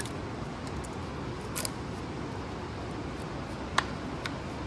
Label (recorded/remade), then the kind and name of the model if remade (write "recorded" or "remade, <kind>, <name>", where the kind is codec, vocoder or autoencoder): recorded